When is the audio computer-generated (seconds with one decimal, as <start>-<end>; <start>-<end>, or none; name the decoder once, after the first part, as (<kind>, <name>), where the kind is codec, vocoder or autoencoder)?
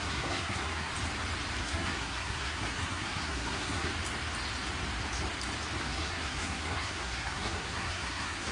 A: 0.0-0.9 (codec, SNAC); 1.6-3.9; 5.8-8.5